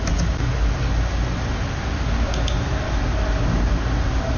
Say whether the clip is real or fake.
real